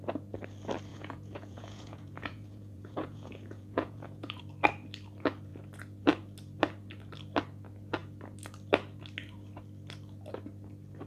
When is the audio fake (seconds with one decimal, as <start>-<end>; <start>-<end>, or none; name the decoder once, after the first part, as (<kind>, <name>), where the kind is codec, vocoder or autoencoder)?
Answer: 0.9-4.4 (vocoder, Vocos)